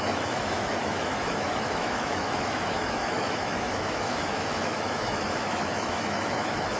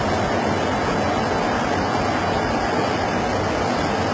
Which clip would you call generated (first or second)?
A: first